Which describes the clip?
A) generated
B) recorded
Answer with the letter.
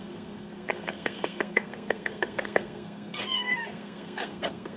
A